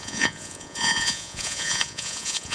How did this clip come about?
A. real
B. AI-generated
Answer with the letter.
B